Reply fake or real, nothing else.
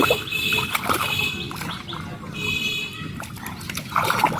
real